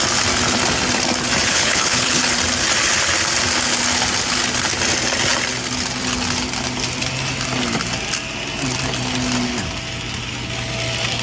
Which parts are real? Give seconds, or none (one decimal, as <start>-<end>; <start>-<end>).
0.0-1.5; 2.2-11.2